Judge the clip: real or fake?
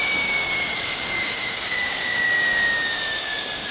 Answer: fake